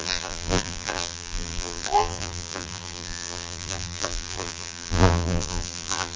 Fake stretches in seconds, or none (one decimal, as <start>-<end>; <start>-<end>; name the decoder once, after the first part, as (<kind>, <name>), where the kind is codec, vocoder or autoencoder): 0.0-6.2 (vocoder, BigVGAN v2)